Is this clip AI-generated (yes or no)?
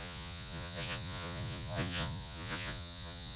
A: yes